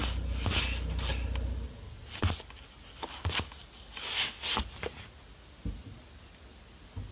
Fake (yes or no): no